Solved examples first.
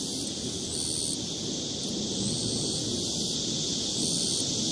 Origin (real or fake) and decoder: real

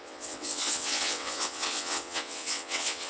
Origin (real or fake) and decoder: fake, vocoder, WaveNeXt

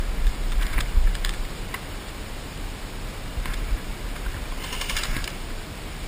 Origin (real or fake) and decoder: real